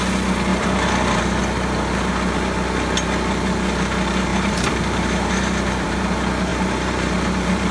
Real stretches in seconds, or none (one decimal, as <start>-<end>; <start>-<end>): 0.0-0.5; 1.4-4.3; 6.0-6.5